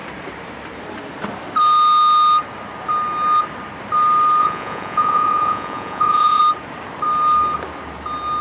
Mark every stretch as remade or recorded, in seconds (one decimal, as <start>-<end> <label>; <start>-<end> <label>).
0.0-4.4 recorded; 4.4-6.4 remade; 6.4-8.4 recorded